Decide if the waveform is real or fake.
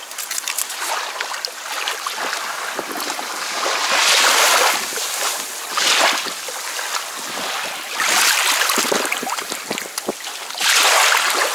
real